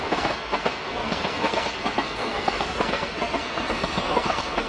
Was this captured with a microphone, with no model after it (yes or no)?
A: no